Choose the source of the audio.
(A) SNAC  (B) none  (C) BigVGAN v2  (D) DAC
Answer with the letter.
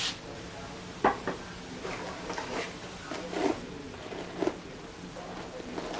B